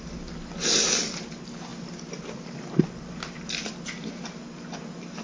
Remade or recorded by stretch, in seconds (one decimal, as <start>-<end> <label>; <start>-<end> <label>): 0.0-5.2 recorded